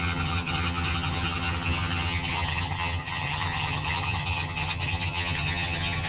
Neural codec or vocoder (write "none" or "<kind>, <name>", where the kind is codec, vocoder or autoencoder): vocoder, HiFi-GAN